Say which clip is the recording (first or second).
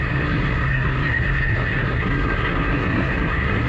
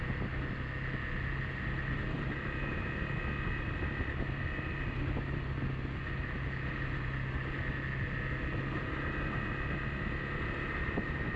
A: second